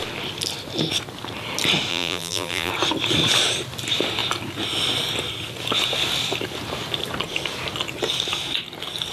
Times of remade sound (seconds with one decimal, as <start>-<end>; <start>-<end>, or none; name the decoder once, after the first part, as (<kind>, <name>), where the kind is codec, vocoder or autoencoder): 1.9-2.7 (vocoder, BigVGAN v2)